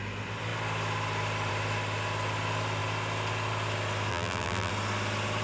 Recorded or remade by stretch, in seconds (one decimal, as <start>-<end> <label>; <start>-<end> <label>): 0.0-4.1 recorded; 4.1-4.7 remade; 4.7-5.4 recorded